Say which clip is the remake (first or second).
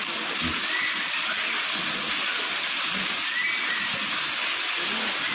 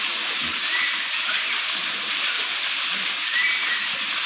second